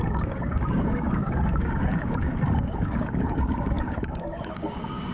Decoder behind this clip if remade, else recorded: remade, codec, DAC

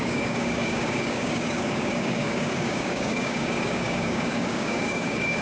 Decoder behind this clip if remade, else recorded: remade, codec, DAC